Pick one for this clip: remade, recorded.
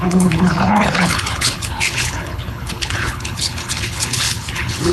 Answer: remade